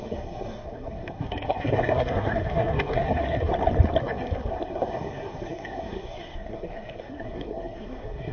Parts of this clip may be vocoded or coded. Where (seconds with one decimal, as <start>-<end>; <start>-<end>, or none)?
0.0-3.5; 4.0-8.3